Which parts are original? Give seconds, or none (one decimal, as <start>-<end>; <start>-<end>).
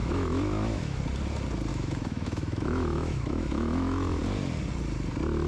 1.0-1.7; 4.2-5.5